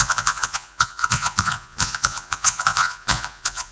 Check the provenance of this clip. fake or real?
fake